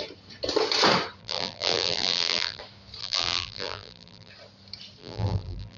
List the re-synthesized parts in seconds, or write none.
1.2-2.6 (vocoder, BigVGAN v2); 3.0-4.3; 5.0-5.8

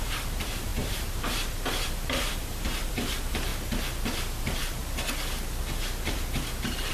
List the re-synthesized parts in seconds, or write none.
0.0-3.5 (vocoder, BigVGAN v2); 4.0-4.8

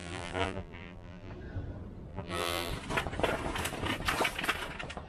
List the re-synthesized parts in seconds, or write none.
0.0-1.3 (vocoder, BigVGAN v2); 2.1-2.7